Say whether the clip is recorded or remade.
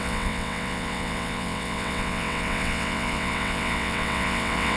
remade